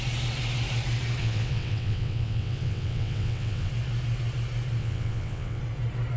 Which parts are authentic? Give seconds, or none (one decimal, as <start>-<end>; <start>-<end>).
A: 0.0-1.2; 3.7-4.8; 5.6-6.2